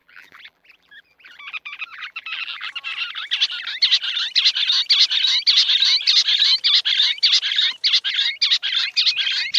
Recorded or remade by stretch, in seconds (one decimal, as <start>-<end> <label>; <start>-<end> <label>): 0.0-2.7 remade; 2.7-9.6 recorded